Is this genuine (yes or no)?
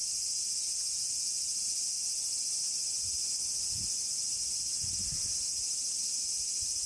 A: yes